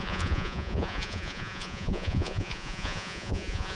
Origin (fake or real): fake